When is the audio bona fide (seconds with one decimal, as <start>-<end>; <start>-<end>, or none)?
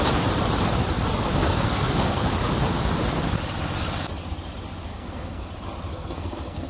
0.0-1.4; 2.3-4.9; 5.5-5.9